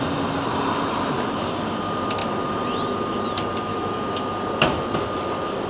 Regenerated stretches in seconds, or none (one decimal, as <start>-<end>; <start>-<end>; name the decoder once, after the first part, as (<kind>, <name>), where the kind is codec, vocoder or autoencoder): 3.7-4.3 (autoencoder, DAC-VAE)